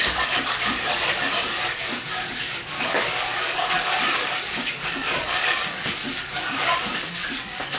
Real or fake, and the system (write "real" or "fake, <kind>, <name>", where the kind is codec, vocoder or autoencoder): fake, codec, DAC